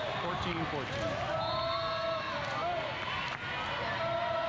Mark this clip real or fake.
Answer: real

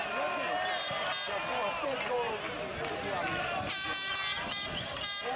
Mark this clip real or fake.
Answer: real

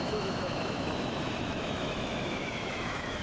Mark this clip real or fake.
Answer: fake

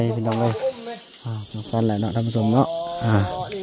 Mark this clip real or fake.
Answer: real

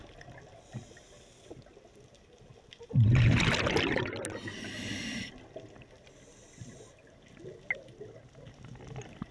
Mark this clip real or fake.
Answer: real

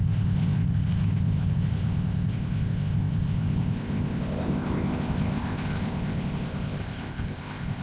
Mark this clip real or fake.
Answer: fake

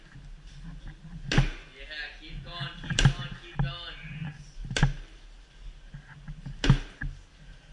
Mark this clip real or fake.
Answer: real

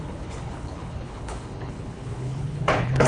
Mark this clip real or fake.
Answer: fake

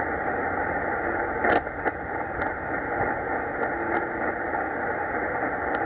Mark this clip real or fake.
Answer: real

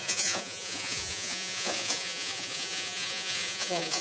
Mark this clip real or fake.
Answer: fake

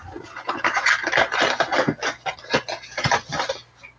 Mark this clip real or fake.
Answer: real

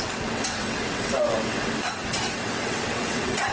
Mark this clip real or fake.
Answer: fake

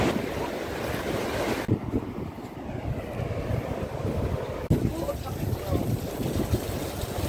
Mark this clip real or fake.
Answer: real